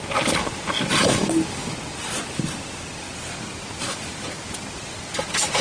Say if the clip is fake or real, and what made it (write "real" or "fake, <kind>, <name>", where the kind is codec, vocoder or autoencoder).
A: real